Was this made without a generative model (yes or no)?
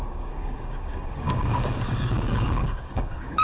no